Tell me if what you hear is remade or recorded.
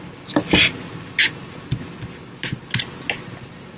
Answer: recorded